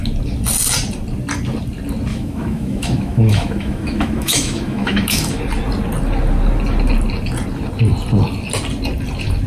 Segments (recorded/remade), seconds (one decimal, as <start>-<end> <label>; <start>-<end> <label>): 0.0-2.1 recorded; 2.1-5.4 remade; 5.4-9.5 recorded